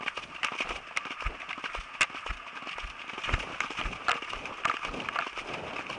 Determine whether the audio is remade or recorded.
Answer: recorded